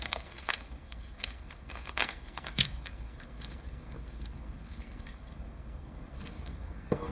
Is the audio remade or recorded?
remade